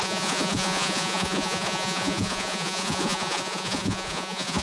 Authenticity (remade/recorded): remade